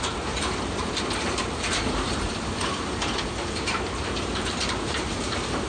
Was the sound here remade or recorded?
remade